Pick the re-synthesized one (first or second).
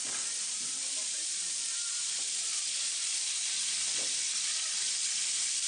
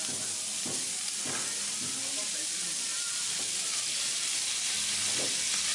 first